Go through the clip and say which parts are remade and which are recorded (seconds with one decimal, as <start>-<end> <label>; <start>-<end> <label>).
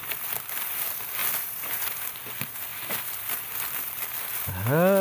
0.0-1.2 recorded; 1.2-2.3 remade; 2.3-2.7 recorded; 2.7-4.5 remade; 4.5-5.0 recorded